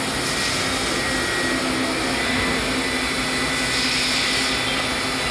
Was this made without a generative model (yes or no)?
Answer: yes